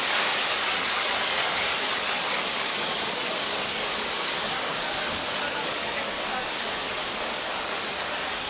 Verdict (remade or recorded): remade